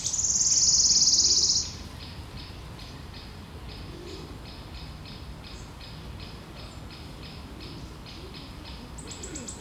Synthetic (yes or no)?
no